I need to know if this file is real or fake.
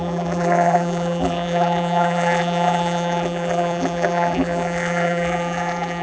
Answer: fake